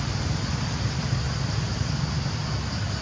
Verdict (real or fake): real